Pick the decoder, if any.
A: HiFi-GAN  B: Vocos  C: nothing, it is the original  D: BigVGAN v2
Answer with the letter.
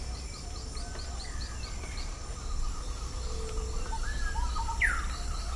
D